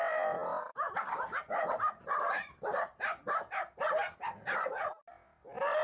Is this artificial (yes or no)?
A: no